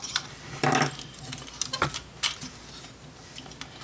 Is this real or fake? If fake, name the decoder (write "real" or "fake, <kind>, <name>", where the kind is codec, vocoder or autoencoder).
real